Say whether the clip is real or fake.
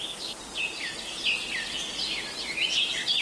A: real